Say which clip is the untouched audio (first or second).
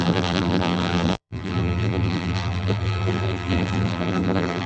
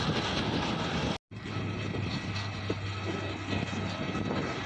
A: second